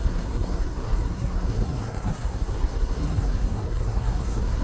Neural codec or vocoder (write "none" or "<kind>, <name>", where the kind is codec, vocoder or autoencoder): codec, SNAC